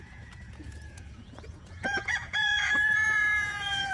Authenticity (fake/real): fake